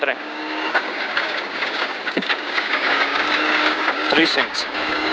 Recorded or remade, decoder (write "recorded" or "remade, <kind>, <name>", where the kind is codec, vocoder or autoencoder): remade, codec, DAC